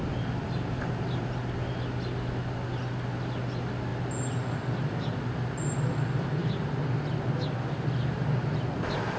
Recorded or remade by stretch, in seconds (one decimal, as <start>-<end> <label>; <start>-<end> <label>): 0.0-9.2 recorded